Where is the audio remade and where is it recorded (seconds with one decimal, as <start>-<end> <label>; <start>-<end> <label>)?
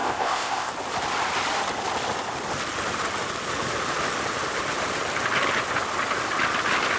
0.0-0.7 remade; 0.7-7.0 recorded